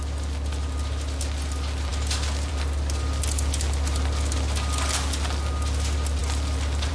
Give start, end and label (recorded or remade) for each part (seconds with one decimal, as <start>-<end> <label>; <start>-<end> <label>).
0.0-6.9 recorded